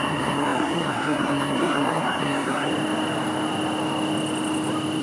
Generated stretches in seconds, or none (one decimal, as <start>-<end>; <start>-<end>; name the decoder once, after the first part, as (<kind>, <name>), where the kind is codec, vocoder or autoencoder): 0.0-2.7 (codec, SNAC)